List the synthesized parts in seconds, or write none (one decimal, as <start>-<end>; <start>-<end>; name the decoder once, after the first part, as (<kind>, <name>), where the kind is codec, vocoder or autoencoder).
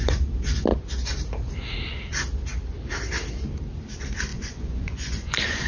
4.3-5.7 (vocoder, Vocos)